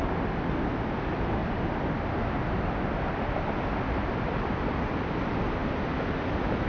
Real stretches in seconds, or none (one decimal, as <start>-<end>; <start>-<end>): 0.0-6.7